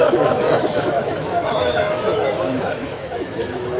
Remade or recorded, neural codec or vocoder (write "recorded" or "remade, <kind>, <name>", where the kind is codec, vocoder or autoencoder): remade, autoencoder, DAC-VAE